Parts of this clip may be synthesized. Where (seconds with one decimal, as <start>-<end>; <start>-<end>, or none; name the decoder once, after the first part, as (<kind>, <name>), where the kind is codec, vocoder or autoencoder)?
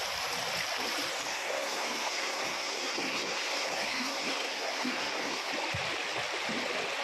1.3-5.5 (codec, SNAC)